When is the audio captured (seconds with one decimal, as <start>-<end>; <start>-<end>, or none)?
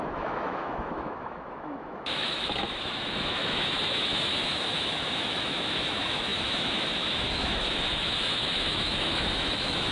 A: none